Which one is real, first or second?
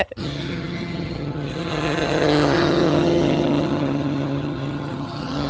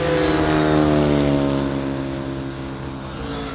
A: second